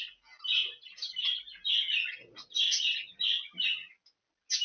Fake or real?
real